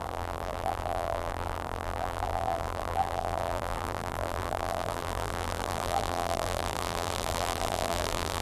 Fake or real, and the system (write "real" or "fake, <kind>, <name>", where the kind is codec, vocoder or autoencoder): fake, vocoder, BigVGAN v2